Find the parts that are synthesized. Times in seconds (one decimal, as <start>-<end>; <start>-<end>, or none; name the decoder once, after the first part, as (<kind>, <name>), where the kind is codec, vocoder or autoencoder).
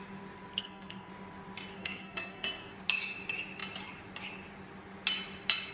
0.6-1.1 (codec, SNAC); 1.7-2.7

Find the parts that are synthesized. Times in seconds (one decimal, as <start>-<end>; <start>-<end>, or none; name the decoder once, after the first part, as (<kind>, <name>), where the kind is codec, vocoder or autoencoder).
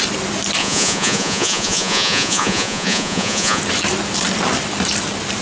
0.6-3.6 (vocoder, Vocos)